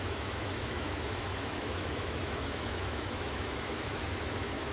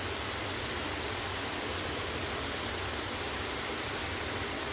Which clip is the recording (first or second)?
second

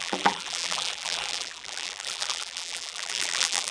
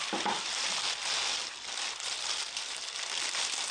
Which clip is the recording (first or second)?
second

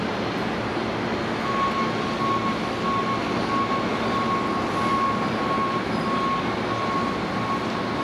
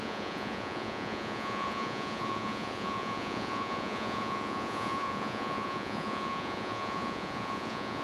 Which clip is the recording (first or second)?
first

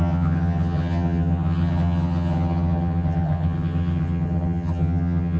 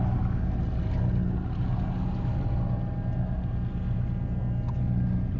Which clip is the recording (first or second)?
second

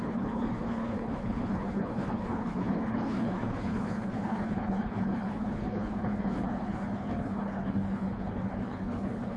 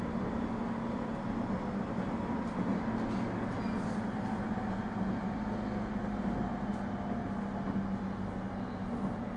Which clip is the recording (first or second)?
second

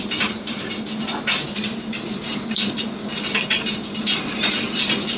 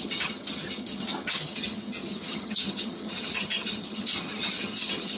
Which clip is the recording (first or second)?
first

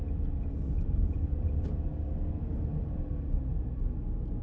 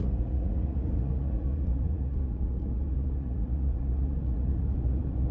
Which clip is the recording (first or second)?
first